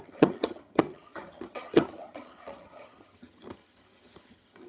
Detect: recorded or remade remade